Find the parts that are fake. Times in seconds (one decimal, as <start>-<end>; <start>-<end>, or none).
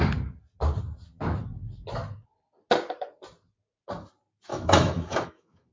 4.5-5.7